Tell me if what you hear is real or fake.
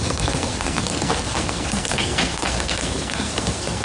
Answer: fake